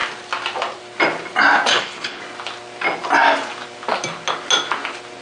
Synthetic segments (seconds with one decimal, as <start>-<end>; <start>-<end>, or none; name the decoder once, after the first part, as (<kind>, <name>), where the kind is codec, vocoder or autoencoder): 1.7-2.2 (codec, HILCodec)